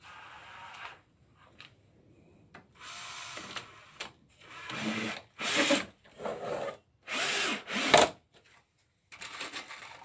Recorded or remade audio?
recorded